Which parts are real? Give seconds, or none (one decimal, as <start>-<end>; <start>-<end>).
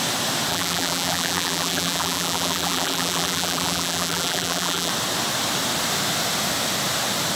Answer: 0.0-0.5; 4.9-7.4